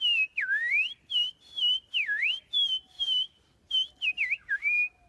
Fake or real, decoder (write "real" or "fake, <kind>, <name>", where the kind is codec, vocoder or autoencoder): real